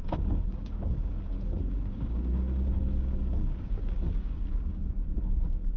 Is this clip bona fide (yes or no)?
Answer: no